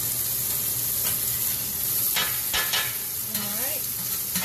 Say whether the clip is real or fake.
real